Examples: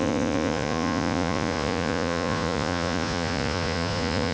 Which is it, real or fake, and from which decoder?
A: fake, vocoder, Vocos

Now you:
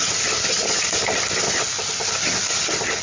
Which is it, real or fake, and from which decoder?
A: real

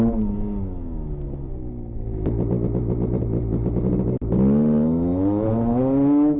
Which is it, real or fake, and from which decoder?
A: real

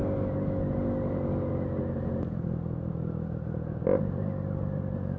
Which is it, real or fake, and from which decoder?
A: real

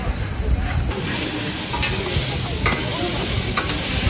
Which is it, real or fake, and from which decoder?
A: real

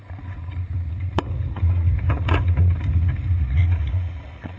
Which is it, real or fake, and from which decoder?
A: fake, vocoder, Vocos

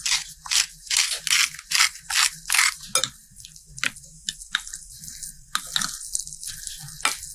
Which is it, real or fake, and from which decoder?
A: real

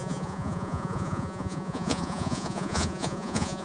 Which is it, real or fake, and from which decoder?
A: fake, vocoder, Vocos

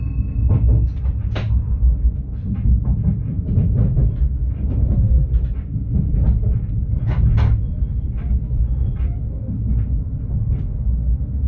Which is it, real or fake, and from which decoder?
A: real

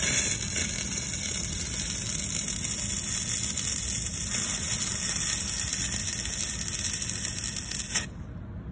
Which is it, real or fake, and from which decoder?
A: real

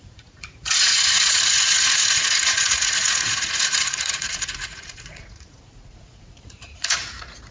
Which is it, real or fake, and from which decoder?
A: fake, vocoder, Vocos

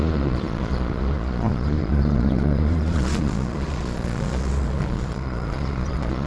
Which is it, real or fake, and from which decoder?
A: fake, vocoder, Vocos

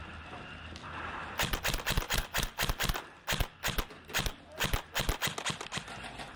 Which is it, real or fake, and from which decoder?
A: real